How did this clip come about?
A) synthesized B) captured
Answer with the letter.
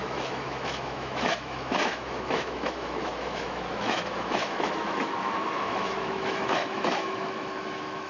A